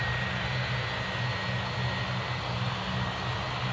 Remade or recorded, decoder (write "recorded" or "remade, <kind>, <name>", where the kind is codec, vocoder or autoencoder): recorded